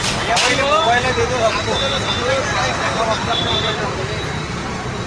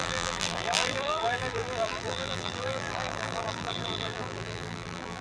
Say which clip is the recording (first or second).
first